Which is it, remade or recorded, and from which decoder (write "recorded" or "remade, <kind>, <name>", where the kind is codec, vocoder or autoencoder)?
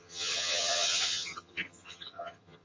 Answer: remade, vocoder, HiFi-GAN